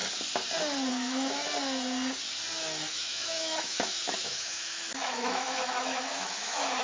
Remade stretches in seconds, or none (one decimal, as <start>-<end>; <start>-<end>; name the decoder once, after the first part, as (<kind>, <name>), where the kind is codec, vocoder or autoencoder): 0.9-1.4 (autoencoder, DAC-VAE); 2.9-6.8